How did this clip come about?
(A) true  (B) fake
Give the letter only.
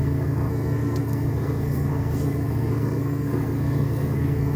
B